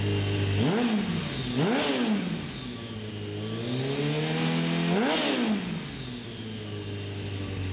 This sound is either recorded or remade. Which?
recorded